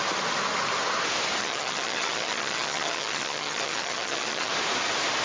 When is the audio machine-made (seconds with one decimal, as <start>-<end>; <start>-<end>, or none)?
1.4-4.5